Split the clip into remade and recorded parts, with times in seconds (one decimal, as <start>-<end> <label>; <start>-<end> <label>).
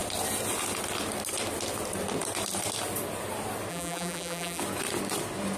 0.0-3.7 recorded; 3.7-4.6 remade; 4.6-5.6 recorded